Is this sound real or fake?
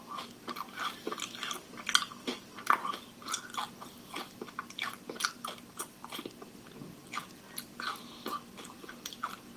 real